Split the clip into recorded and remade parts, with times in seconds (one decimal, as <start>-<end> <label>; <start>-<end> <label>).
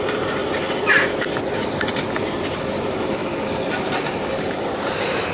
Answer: 0.0-5.3 recorded